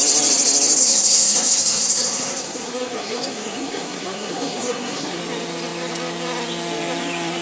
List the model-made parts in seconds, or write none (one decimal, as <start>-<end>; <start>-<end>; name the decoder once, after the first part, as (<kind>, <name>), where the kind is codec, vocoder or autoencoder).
0.8-5.2 (codec, SNAC)